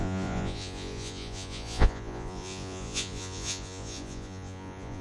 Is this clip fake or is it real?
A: fake